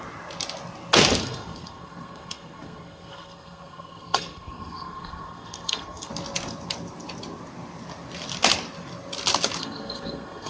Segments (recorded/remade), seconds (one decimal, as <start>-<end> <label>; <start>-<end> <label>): 0.0-1.2 recorded; 1.2-6.1 remade; 6.1-9.6 recorded; 9.6-10.5 remade